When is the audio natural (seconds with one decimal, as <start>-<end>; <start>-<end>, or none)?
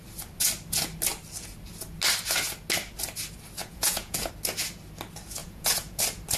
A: 0.0-3.6; 4.3-5.4; 6.0-6.4